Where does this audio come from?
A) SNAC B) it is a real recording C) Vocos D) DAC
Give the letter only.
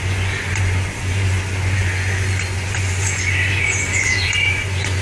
C